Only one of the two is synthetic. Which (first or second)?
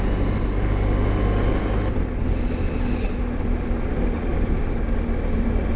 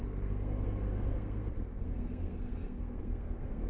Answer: second